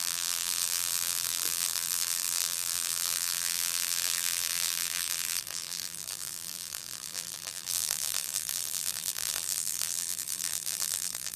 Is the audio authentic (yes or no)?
no